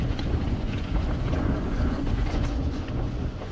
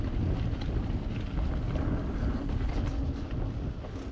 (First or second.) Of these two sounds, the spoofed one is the first